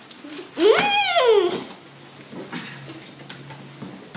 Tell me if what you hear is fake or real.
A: real